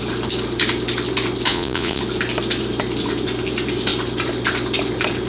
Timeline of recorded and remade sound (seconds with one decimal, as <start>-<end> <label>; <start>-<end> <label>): 0.0-1.5 recorded; 1.5-2.0 remade; 2.0-5.3 recorded